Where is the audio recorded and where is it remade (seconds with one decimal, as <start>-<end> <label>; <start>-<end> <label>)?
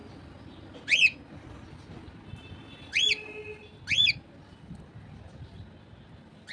0.0-6.5 recorded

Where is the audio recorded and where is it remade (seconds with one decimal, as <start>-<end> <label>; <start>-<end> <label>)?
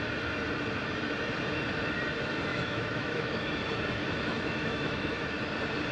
0.0-2.5 recorded; 2.5-3.6 remade; 3.6-4.0 recorded; 4.0-5.4 remade; 5.4-5.9 recorded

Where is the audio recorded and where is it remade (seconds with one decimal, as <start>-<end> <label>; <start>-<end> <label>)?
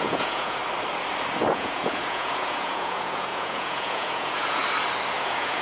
0.0-0.6 remade; 0.6-1.4 recorded; 1.4-4.6 remade; 4.6-5.1 recorded; 5.1-5.6 remade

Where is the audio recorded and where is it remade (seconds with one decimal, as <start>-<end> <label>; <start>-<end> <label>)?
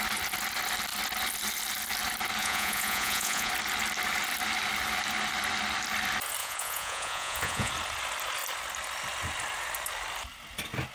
0.0-2.4 recorded; 2.4-3.5 remade; 3.5-6.4 recorded; 6.4-7.7 remade; 7.7-10.9 recorded